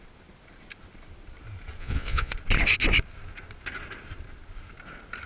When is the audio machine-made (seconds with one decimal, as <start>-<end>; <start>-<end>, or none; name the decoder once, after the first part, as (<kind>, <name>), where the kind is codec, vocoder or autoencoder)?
1.8-2.3 (vocoder, Vocos)